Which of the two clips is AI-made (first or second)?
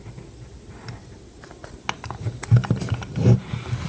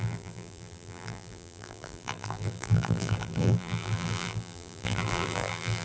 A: second